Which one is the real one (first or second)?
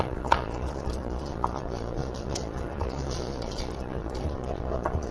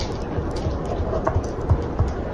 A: second